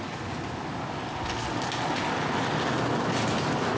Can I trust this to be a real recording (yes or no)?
yes